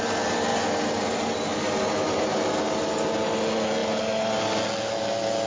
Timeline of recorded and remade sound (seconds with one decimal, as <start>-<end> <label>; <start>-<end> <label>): 0.0-5.5 recorded